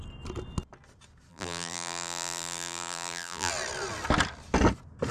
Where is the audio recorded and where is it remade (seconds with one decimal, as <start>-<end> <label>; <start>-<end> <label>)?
0.0-1.3 recorded; 1.3-3.5 remade; 3.5-5.1 recorded